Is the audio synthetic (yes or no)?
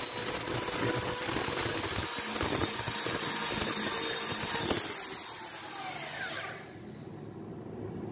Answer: no